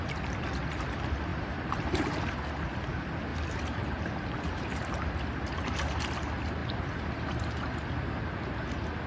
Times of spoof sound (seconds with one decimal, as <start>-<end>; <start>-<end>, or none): 1.3-2.1; 3.3-4.9; 6.6-7.6